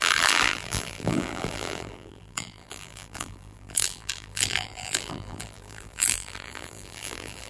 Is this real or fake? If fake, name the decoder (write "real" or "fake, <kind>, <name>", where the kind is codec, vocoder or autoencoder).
fake, vocoder, BigVGAN v2